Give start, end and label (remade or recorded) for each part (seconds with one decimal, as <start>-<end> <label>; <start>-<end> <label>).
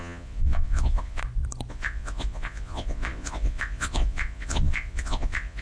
0.0-1.2 remade; 1.2-1.7 recorded; 1.7-5.6 remade